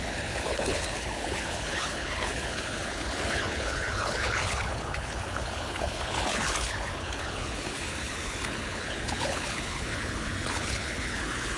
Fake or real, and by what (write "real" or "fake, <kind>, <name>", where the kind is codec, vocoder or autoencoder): fake, codec, HILCodec